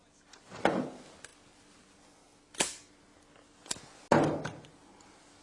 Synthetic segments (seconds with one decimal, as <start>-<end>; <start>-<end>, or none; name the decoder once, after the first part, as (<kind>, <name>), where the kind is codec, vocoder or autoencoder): none